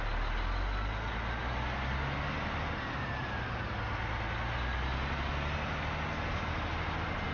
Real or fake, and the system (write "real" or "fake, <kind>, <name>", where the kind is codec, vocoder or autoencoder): real